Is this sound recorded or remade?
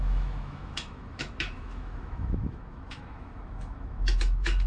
remade